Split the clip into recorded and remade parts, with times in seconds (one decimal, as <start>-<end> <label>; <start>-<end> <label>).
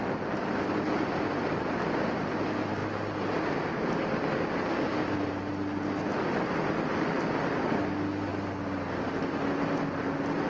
0.0-10.5 recorded